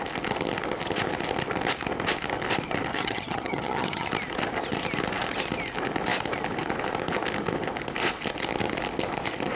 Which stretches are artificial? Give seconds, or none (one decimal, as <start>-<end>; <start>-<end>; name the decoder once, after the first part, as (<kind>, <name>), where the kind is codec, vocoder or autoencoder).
2.9-4.1 (vocoder, HiFi-GAN)